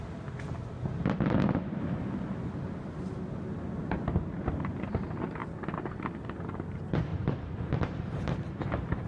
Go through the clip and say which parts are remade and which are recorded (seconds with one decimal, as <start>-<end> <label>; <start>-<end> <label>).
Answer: 0.0-7.1 recorded; 7.1-9.1 remade